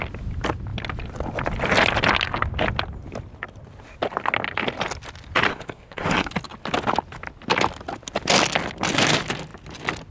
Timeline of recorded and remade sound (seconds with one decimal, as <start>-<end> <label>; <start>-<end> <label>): 0.0-5.5 recorded; 5.5-6.3 remade; 6.3-10.1 recorded